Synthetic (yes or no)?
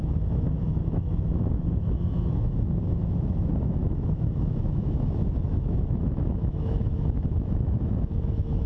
yes